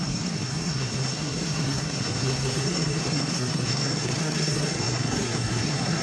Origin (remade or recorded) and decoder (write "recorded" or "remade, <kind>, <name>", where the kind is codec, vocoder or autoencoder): remade, codec, SNAC